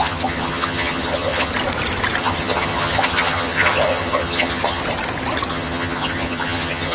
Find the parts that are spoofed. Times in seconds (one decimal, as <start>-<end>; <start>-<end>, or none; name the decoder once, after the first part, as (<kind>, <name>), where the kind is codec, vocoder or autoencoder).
0.0-1.5 (vocoder, HiFi-GAN); 2.2-4.8; 5.5-6.9